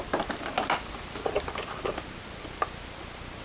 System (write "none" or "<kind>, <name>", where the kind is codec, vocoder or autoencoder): vocoder, BigVGAN v2